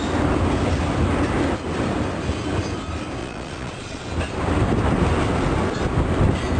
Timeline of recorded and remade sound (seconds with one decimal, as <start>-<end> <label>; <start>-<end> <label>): 0.0-3.2 recorded; 3.2-4.0 remade; 4.0-6.6 recorded